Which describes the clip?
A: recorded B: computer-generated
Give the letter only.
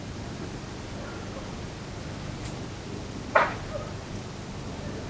B